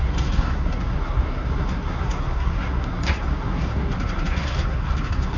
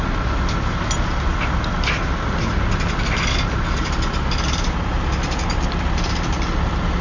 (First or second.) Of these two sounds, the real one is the second